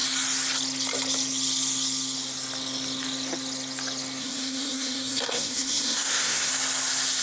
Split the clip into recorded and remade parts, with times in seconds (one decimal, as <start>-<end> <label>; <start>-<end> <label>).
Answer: 0.0-4.2 recorded; 4.2-6.5 remade; 6.5-7.2 recorded